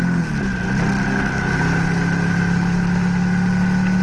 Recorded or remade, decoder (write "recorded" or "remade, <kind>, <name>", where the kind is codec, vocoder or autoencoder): recorded